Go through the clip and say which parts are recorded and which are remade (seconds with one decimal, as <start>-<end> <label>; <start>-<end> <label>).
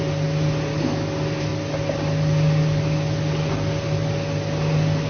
0.0-5.1 recorded